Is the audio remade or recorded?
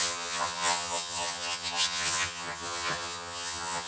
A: remade